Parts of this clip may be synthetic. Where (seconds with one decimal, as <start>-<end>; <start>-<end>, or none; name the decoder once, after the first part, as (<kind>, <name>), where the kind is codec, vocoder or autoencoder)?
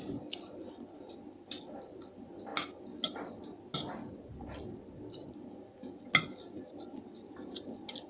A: none